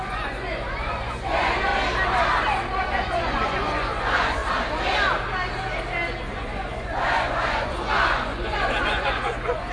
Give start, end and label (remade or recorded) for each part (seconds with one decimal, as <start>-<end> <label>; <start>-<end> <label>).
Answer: 0.0-1.7 remade; 1.7-2.8 recorded; 2.8-4.4 remade; 4.4-6.2 recorded; 6.2-9.7 remade